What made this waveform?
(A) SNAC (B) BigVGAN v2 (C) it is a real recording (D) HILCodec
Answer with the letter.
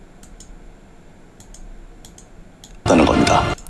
C